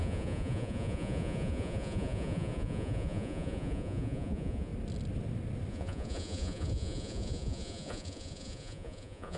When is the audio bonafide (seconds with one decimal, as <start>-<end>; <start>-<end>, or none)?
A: 4.7-5.7

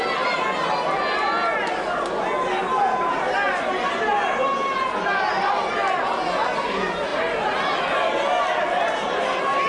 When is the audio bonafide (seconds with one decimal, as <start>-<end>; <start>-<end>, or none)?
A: 0.0-9.7